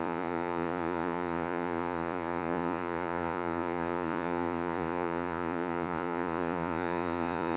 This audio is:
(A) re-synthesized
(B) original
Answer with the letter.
A